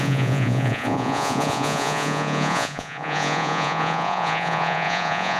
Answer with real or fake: fake